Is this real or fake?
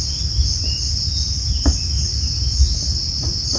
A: real